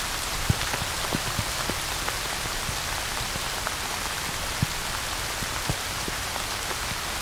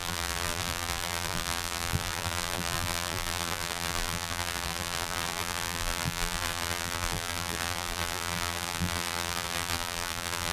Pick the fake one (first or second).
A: second